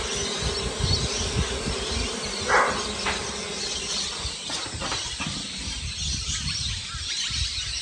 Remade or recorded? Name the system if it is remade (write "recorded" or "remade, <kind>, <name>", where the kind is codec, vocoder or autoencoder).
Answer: recorded